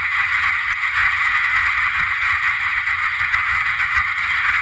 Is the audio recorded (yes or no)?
no